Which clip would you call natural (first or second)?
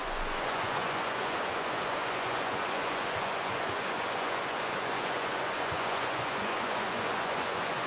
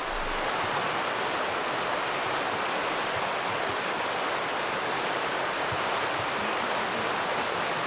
second